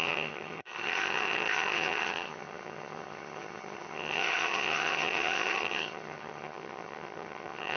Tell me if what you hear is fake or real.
fake